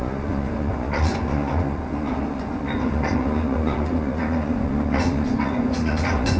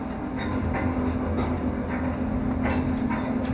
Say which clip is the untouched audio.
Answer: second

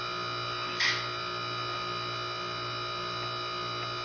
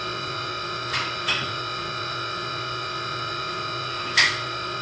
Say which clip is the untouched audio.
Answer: first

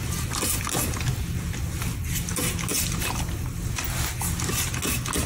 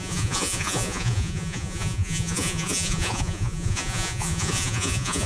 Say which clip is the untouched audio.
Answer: first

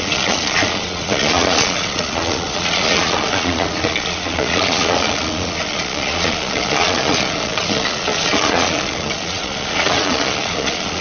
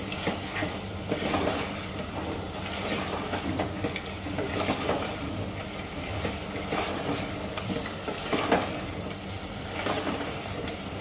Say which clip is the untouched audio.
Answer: second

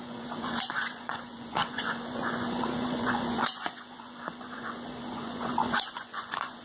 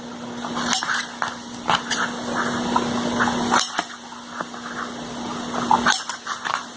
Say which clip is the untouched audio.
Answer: second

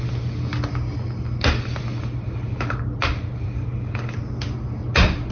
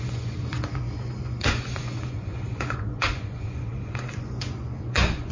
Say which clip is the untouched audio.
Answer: first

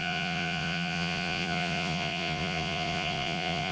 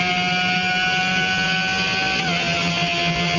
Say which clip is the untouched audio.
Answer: second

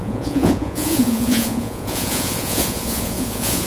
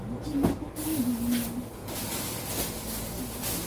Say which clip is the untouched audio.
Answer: second